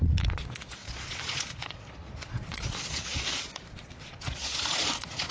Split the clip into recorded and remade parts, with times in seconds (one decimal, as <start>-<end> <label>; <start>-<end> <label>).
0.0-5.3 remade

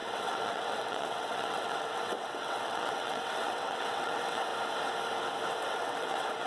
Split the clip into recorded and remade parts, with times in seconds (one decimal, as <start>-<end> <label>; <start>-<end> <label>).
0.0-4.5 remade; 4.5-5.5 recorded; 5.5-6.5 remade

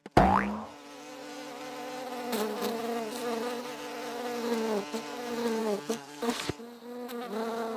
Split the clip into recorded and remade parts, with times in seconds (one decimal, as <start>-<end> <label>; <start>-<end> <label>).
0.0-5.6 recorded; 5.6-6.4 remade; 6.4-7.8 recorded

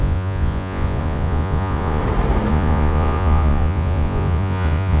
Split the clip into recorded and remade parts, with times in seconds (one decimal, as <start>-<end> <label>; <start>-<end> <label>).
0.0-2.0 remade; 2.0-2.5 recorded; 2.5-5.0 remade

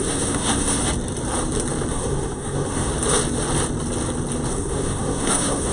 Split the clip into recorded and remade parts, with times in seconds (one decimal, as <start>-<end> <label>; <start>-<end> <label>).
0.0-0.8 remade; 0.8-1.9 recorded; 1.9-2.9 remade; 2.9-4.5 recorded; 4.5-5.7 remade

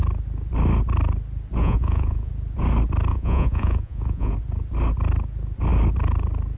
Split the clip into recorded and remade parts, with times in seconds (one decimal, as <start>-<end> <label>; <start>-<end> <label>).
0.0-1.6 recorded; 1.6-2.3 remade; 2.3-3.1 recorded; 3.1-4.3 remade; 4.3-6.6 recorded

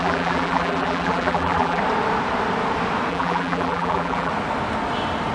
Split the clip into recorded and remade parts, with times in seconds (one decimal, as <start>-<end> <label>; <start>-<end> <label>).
0.0-1.8 remade; 1.8-3.1 recorded; 3.1-4.3 remade; 4.3-5.3 recorded